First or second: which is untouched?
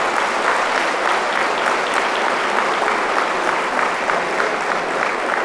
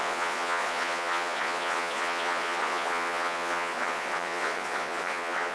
first